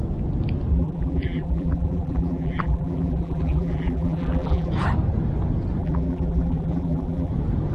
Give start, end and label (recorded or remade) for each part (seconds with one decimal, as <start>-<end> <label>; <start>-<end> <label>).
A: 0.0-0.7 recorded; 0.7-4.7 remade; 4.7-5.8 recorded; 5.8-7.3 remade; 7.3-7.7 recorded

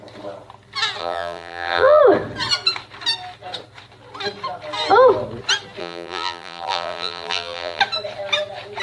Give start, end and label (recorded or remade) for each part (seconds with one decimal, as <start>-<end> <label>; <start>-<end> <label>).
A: 0.0-1.0 recorded; 1.0-2.0 remade; 2.0-5.8 recorded; 5.8-7.8 remade; 7.8-8.8 recorded

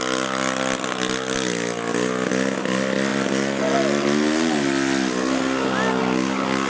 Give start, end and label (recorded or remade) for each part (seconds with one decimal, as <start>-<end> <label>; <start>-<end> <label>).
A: 0.0-6.7 recorded